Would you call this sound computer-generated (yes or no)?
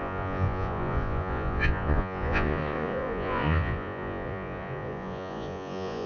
yes